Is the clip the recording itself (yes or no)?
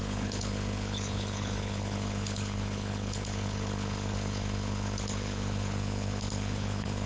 no